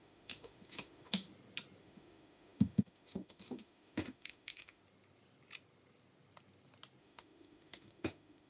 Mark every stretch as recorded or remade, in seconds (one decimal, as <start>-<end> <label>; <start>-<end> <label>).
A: 0.0-1.3 remade; 1.3-1.8 recorded; 1.8-4.8 remade; 4.8-7.0 recorded; 7.0-8.5 remade